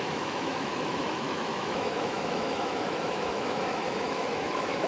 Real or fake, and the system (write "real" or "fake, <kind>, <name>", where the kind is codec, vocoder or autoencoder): fake, autoencoder, DAC-VAE